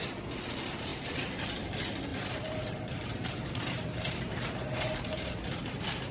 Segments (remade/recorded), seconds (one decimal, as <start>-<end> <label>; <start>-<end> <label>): 0.0-0.9 recorded; 0.9-1.4 remade; 1.4-2.1 recorded; 2.1-5.3 remade; 5.3-6.1 recorded